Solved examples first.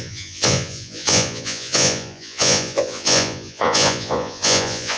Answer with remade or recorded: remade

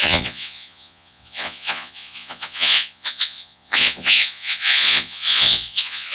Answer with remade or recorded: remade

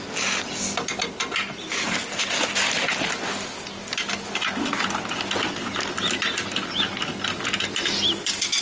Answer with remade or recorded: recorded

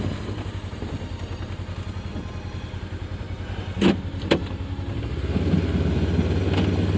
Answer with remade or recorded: recorded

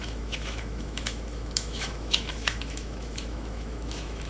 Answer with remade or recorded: remade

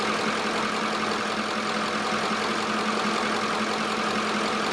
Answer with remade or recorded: recorded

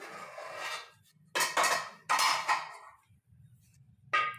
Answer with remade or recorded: recorded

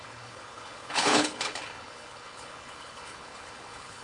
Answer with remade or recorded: remade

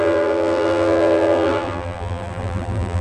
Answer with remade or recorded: remade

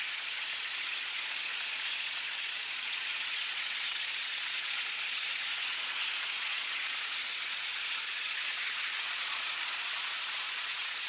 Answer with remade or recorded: remade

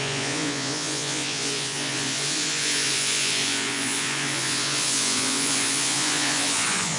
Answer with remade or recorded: remade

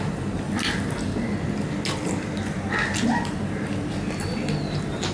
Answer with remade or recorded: recorded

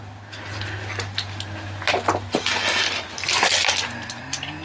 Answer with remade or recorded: recorded